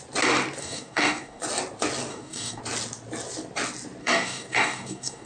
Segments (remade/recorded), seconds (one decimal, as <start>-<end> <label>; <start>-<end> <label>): 0.0-0.6 recorded; 0.6-1.4 remade; 1.4-2.1 recorded; 2.1-2.6 remade; 2.6-4.0 recorded; 4.0-5.3 remade